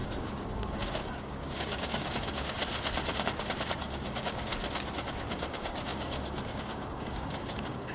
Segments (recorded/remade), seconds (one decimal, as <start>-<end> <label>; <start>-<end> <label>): 0.0-2.6 remade; 2.6-3.8 recorded; 3.8-4.5 remade; 4.5-5.1 recorded; 5.1-7.9 remade